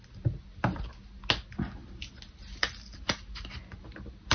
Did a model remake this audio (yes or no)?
no